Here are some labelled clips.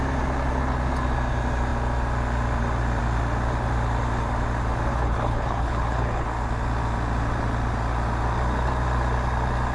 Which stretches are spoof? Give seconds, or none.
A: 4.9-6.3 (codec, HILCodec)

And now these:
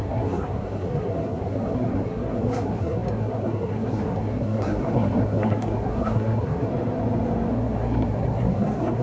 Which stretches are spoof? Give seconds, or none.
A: 0.0-6.7 (codec, SNAC); 7.5-9.0

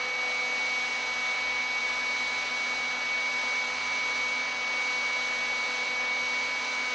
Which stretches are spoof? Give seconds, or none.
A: none

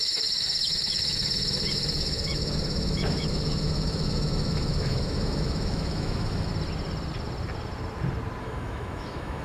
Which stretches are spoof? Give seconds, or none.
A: 0.0-6.5 (autoencoder, DAC-VAE); 8.4-9.4

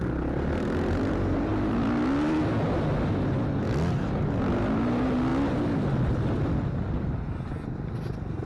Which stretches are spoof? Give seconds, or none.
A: none

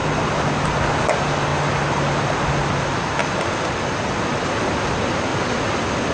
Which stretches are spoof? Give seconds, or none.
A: none

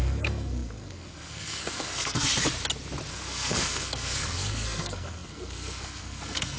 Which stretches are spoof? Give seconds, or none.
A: 0.0-2.3 (codec, SNAC); 3.1-6.6

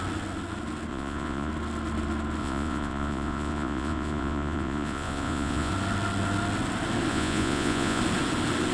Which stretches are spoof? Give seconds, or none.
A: 0.9-1.5 (vocoder, Vocos); 2.4-5.7; 7.1-8.0